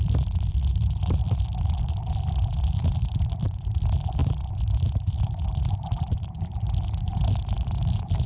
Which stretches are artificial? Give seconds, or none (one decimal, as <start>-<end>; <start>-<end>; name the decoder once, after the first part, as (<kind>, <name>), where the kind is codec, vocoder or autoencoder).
0.0-1.2 (vocoder, BigVGAN v2); 1.9-8.3

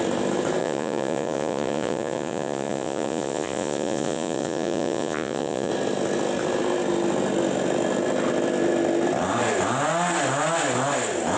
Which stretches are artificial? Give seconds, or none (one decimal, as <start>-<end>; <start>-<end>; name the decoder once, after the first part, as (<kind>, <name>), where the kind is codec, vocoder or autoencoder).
0.6-5.7 (vocoder, Vocos)

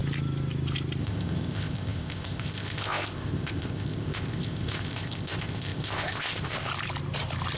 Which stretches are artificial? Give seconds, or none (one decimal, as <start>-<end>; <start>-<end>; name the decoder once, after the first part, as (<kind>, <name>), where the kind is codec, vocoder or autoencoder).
1.0-6.7 (codec, ZipCodec)